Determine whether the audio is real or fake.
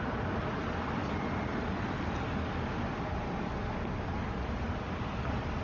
real